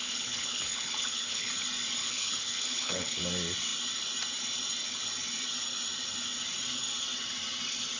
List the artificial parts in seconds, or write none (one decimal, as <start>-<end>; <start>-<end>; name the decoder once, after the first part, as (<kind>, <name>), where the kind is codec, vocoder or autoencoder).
0.0-1.5 (codec, HILCodec); 2.0-3.2